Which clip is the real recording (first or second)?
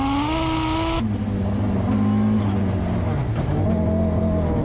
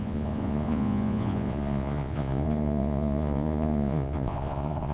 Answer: first